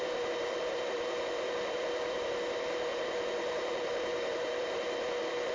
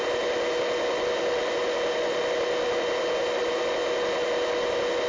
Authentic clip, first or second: second